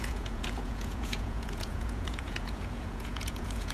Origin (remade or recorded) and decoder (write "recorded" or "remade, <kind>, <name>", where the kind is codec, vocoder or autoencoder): remade, vocoder, Vocos